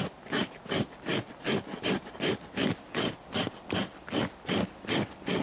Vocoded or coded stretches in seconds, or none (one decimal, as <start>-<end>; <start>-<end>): none